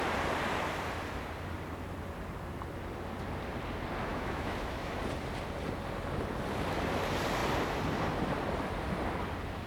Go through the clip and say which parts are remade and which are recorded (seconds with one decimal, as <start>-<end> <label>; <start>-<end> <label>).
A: 0.0-4.1 recorded; 4.1-5.0 remade; 5.0-9.7 recorded